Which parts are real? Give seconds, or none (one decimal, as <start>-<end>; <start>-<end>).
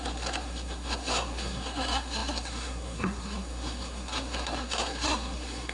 none